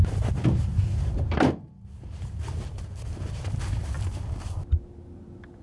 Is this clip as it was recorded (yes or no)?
yes